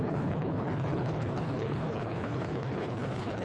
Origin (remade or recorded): remade